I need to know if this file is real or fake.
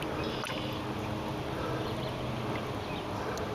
real